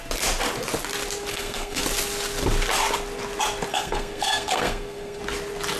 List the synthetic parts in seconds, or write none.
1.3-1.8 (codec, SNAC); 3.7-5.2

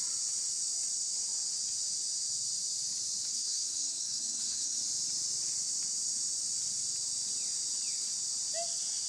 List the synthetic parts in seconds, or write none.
3.3-4.8 (codec, SNAC)